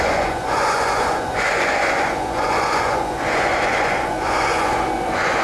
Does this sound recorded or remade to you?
remade